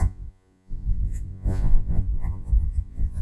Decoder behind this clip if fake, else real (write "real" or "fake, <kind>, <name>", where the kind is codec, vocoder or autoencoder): fake, vocoder, Vocos